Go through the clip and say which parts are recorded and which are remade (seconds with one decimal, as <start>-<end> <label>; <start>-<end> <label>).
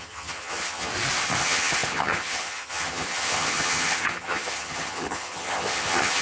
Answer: 0.0-0.9 remade; 0.9-1.4 recorded; 1.4-6.2 remade